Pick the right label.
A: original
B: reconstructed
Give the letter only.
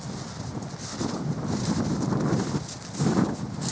A